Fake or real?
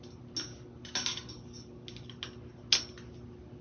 real